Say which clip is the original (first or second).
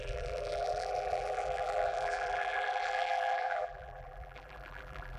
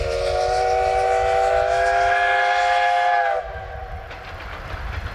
second